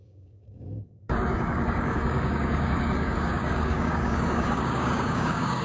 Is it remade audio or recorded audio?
remade